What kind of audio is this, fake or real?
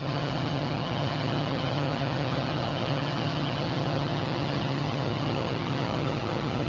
fake